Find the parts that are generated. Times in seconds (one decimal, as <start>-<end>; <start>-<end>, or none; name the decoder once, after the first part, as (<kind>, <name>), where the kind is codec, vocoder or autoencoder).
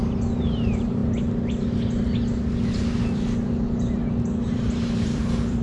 0.0-1.0 (vocoder, BigVGAN v2); 4.4-5.6